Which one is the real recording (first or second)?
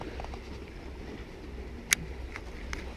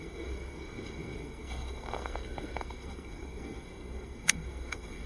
first